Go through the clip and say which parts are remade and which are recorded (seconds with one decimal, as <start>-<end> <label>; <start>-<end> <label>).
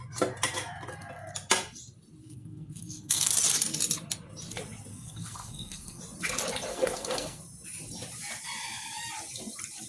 0.0-2.2 recorded; 2.2-3.3 remade; 3.3-4.9 recorded; 4.9-6.0 remade; 6.0-6.7 recorded; 6.7-7.4 remade; 7.4-9.9 recorded